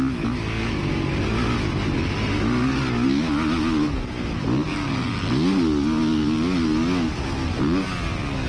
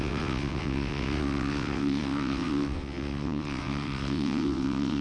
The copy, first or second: second